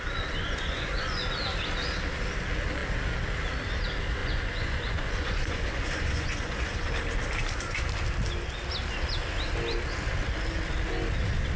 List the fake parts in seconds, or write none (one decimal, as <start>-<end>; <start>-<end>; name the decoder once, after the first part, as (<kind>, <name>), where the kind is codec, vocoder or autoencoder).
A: 0.4-1.3 (vocoder, Vocos); 4.2-6.9